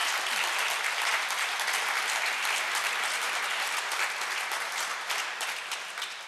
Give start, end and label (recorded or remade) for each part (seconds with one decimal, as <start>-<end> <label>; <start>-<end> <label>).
0.0-6.3 recorded